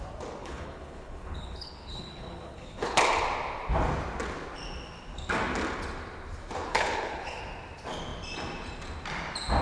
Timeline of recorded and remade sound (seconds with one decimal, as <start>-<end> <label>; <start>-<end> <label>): 0.0-0.4 recorded; 0.4-3.0 remade; 3.0-6.7 recorded; 6.7-7.4 remade; 7.4-9.6 recorded